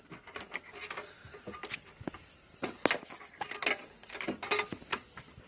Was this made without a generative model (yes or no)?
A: yes